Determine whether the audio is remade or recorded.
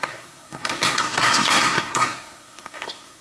remade